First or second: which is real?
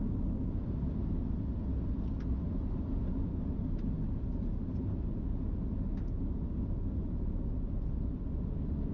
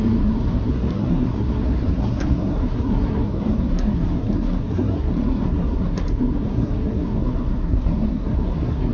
first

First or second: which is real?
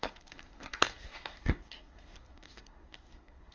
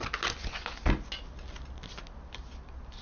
second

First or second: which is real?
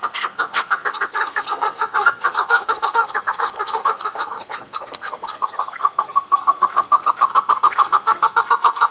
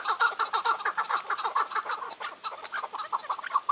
second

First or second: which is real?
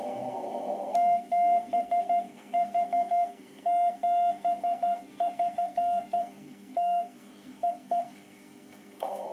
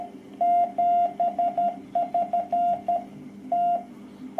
second